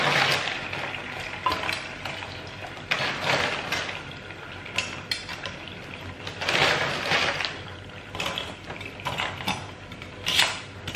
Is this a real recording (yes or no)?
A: yes